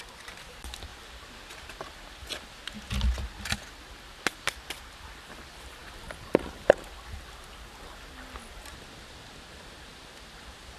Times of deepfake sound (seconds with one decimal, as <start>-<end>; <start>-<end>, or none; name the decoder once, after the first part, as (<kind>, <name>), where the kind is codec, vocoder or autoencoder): 0.0-0.9 (vocoder, BigVGAN v2); 4.8-5.8; 8.7-9.9; 10.4-10.8